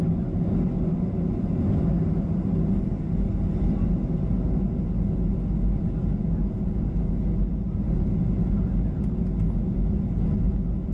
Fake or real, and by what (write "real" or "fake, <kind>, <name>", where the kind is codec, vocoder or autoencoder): real